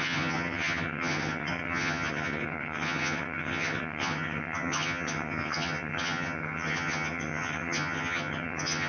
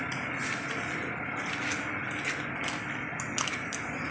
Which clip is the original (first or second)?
second